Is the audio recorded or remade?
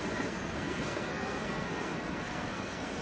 remade